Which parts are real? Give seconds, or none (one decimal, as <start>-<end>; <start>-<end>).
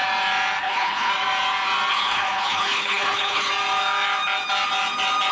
0.0-0.6; 1.1-1.9; 3.5-5.3